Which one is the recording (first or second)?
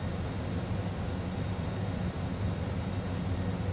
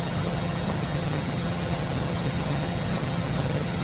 first